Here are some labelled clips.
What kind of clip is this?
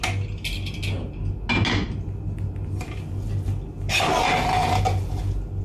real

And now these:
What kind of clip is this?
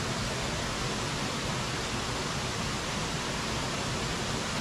real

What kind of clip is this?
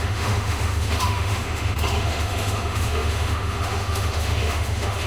fake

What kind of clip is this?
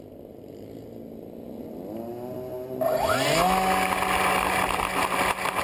real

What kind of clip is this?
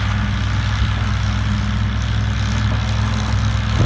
real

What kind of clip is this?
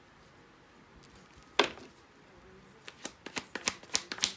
real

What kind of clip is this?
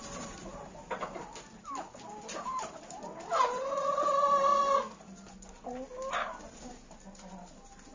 real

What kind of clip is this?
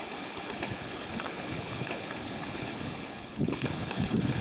fake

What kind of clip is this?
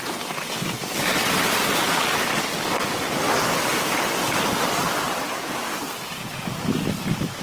real